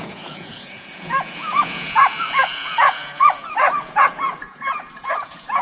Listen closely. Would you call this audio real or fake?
fake